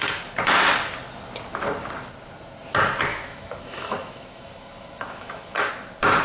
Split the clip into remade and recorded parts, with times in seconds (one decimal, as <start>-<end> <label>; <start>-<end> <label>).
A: 0.0-3.1 recorded; 3.1-5.7 remade; 5.7-6.2 recorded